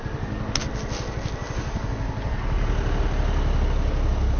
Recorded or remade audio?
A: recorded